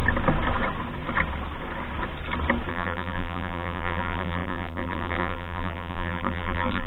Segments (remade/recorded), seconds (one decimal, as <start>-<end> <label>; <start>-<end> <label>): 0.0-2.7 recorded; 2.7-6.9 remade